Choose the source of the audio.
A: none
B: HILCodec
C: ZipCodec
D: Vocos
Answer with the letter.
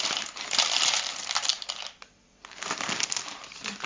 A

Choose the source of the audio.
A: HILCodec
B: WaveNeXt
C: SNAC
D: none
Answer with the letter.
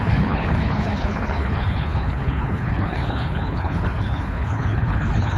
A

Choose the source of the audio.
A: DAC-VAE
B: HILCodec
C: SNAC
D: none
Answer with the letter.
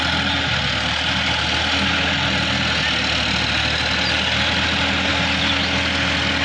D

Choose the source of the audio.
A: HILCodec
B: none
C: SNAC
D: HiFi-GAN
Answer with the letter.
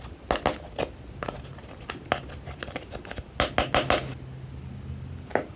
B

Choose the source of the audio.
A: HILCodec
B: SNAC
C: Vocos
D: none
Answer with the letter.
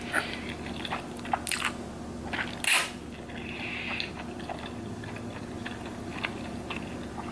D